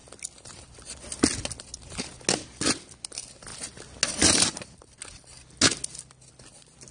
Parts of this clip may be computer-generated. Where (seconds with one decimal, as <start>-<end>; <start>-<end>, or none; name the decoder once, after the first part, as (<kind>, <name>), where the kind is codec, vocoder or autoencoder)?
none

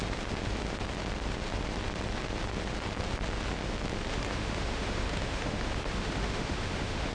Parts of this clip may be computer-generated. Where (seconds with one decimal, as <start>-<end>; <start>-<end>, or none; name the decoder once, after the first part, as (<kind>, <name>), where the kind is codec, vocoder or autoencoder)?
4.1-7.1 (autoencoder, DAC-VAE)

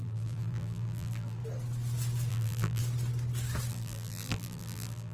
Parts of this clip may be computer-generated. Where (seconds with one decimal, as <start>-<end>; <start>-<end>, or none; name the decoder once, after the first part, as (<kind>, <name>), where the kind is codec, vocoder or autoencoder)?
0.0-1.4 (vocoder, BigVGAN v2); 2.3-2.8; 3.7-5.1

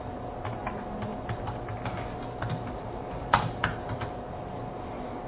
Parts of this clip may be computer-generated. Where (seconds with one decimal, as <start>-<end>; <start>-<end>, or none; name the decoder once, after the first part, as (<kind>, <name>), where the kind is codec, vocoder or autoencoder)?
none